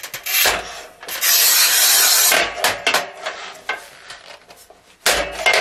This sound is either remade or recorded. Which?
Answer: recorded